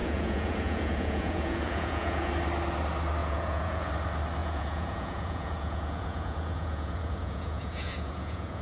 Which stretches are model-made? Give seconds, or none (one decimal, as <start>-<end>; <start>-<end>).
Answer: 0.0-2.3; 3.2-3.9; 4.4-8.6